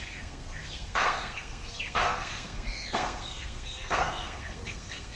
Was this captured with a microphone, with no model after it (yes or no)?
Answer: no